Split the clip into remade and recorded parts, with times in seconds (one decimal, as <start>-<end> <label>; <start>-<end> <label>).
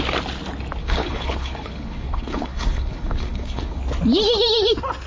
0.0-0.8 recorded; 0.8-3.8 remade; 3.8-5.1 recorded